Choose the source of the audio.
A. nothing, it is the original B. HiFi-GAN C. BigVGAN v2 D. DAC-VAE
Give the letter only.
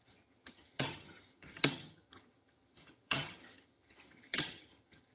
B